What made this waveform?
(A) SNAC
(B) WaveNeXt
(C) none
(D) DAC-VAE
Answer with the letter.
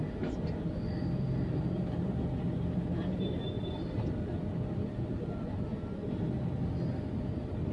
C